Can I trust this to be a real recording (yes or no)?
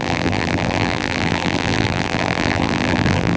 no